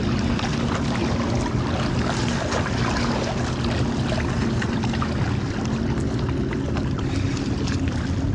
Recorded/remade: recorded